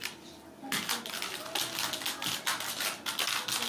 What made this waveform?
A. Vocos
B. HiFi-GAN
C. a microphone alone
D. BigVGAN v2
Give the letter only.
C